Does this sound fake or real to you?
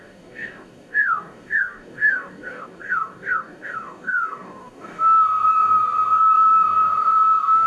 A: fake